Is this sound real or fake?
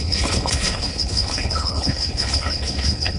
fake